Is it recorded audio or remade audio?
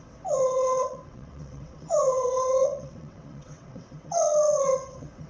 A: remade